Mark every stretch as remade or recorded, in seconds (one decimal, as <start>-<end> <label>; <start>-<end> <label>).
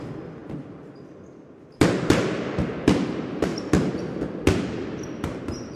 0.0-5.8 recorded